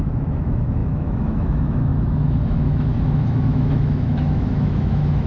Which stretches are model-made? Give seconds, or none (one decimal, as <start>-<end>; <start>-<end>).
0.0-5.3